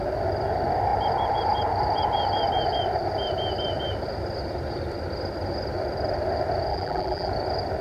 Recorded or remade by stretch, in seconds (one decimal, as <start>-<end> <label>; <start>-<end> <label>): 0.0-6.7 recorded; 6.7-7.3 remade; 7.3-7.8 recorded